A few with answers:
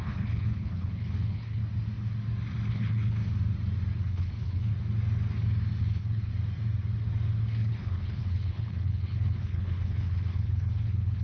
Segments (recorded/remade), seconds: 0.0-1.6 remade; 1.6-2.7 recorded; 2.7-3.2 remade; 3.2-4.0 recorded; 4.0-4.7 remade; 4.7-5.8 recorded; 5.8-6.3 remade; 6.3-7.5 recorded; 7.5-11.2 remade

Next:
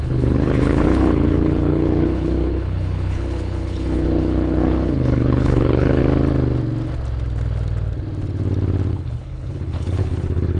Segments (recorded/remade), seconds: 0.0-6.0 remade; 6.0-8.9 recorded; 8.9-10.6 remade

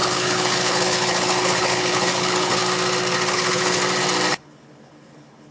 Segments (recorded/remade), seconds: 0.0-2.6 remade; 2.6-3.3 recorded; 3.3-3.8 remade; 3.8-4.3 recorded; 4.3-5.5 remade

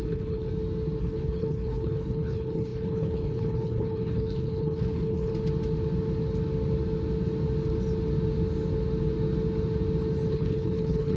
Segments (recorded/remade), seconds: 0.0-0.5 remade; 0.5-1.0 recorded; 1.0-5.3 remade; 5.3-10.3 recorded; 10.3-11.2 remade

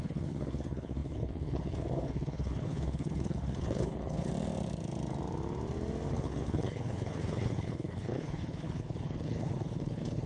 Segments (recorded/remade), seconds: 0.0-4.3 remade; 4.3-6.1 recorded; 6.1-10.3 remade

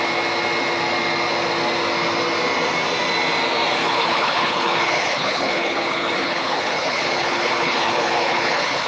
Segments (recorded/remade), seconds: 0.0-3.8 recorded; 3.8-8.9 remade

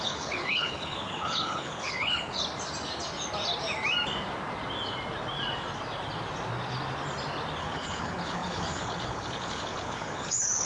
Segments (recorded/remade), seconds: 0.0-2.4 remade; 2.4-7.6 recorded; 7.6-10.7 remade